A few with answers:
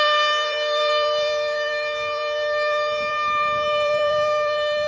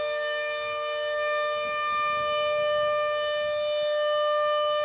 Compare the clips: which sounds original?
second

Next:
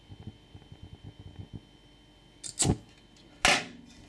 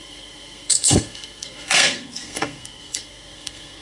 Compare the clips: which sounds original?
first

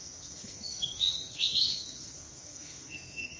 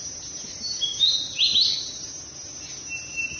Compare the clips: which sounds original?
second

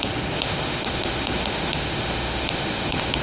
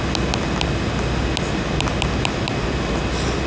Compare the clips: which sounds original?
second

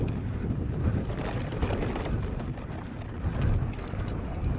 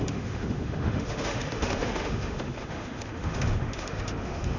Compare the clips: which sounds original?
first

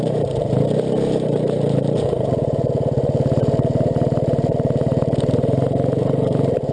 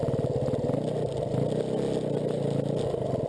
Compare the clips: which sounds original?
second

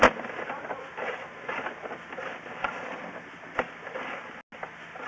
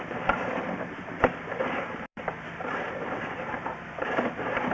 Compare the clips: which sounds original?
first